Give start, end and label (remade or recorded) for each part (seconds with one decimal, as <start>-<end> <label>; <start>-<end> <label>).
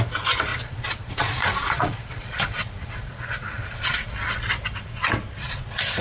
0.0-0.5 recorded; 0.5-4.1 remade; 4.1-5.4 recorded; 5.4-6.0 remade